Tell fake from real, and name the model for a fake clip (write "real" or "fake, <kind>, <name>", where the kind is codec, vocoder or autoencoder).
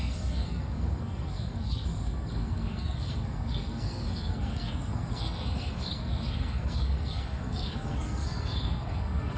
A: fake, codec, SNAC